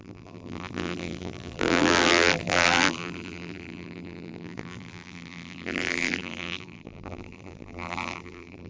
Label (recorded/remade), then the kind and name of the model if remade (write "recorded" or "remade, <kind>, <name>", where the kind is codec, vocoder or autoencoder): remade, vocoder, BigVGAN v2